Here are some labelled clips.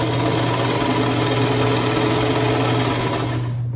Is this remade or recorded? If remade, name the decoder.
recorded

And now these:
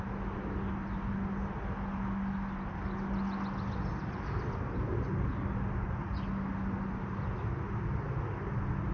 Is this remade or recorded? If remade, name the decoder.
recorded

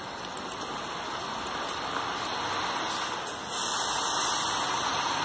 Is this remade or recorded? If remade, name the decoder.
recorded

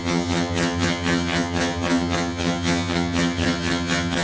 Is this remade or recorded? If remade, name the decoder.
remade, vocoder, HiFi-GAN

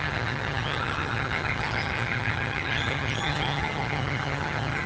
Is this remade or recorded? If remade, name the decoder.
remade, vocoder, HiFi-GAN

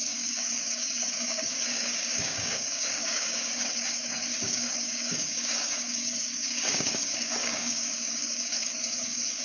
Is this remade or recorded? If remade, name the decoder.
remade, codec, DAC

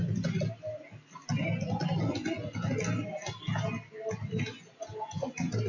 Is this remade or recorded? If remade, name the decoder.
recorded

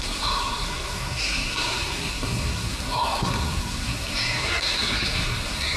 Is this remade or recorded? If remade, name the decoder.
remade, codec, SNAC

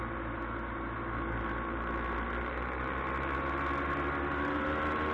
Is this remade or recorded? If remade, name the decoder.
recorded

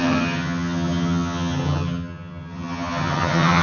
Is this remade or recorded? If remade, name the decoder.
remade, vocoder, HiFi-GAN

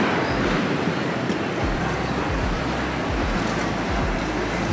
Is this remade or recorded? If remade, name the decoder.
recorded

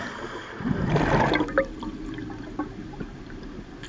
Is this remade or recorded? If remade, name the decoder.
recorded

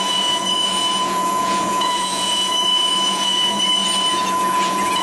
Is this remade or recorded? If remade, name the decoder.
remade, vocoder, Vocos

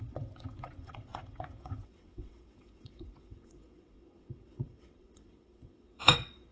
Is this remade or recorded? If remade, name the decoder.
remade, vocoder, WaveNeXt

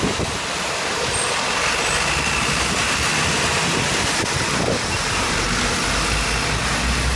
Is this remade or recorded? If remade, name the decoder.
recorded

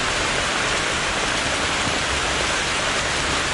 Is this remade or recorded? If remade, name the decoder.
recorded